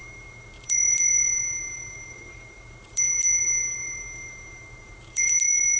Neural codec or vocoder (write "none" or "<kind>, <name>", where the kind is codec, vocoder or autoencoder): vocoder, BigVGAN v2